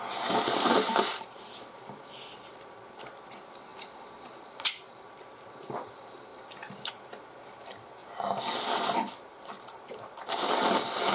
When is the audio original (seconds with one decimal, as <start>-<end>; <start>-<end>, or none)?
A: 3.7-4.4; 8.0-9.3